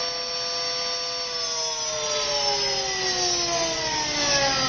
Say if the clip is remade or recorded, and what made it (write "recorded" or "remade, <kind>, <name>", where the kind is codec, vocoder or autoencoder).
recorded